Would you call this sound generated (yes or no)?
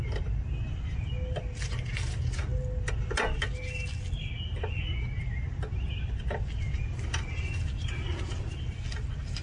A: no